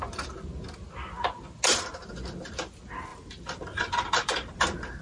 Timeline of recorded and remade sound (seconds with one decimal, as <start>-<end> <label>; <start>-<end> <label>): 0.0-3.1 recorded; 3.1-5.0 remade